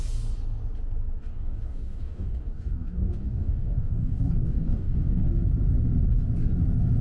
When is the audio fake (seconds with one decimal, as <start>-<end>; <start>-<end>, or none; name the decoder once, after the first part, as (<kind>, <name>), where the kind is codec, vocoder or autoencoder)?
1.2-5.3 (codec, DAC)